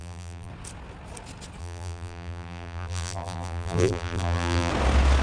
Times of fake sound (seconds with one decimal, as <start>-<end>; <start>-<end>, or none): 0.0-0.5; 1.6-4.7